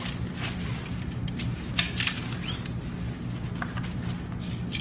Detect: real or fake real